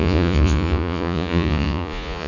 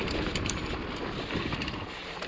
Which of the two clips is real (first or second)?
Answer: second